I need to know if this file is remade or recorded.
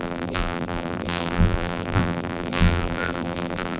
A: remade